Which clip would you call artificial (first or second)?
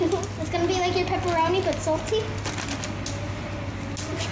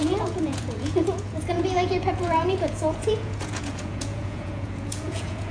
second